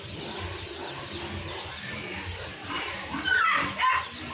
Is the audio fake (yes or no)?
no